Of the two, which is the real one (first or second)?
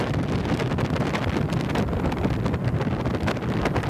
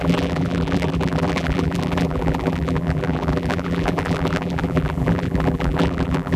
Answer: first